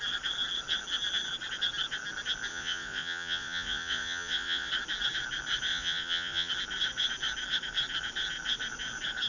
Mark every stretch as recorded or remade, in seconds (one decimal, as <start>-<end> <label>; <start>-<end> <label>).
0.0-2.5 recorded; 2.5-4.7 remade; 4.7-5.7 recorded; 5.7-6.5 remade; 6.5-9.3 recorded